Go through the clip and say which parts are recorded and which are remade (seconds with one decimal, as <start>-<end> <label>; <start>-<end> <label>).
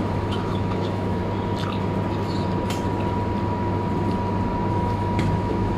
0.0-1.2 remade; 1.2-4.7 recorded; 4.7-5.8 remade